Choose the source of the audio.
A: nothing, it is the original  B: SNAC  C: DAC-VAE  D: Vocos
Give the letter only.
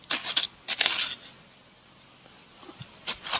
A